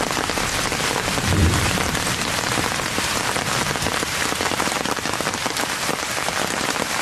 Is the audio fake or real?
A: real